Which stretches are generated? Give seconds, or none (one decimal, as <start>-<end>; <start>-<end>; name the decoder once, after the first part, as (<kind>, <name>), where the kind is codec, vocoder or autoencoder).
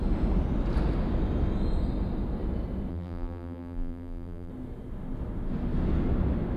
2.9-4.5 (vocoder, BigVGAN v2)